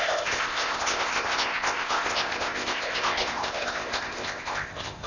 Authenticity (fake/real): fake